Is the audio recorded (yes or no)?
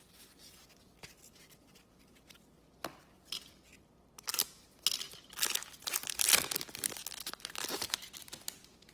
yes